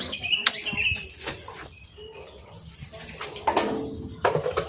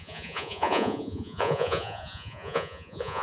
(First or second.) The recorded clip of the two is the first